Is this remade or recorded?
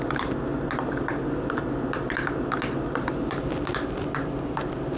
recorded